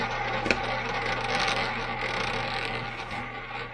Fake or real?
real